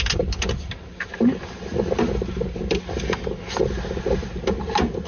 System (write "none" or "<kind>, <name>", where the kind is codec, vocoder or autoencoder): none